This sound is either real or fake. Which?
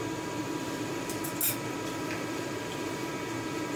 real